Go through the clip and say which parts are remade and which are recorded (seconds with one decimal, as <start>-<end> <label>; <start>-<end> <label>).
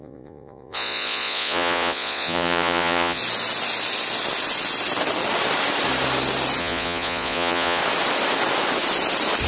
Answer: 0.0-3.2 remade; 3.2-6.6 recorded; 6.6-7.8 remade; 7.8-9.5 recorded